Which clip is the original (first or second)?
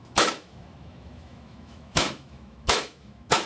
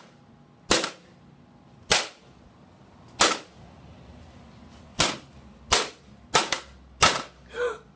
second